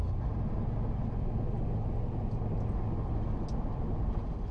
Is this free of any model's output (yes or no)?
yes